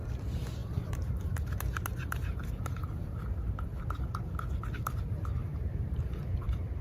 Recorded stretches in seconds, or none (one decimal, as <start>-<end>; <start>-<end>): 0.0-0.6; 3.8-5.4; 6.0-6.8